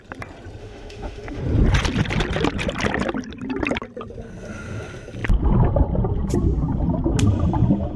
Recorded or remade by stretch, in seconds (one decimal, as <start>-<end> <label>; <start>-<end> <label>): 0.0-0.6 recorded; 0.6-1.4 remade; 1.4-8.0 recorded